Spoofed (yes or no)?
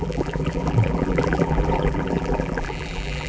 yes